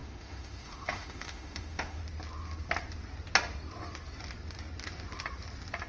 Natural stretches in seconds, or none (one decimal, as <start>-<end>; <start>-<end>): 2.0-5.9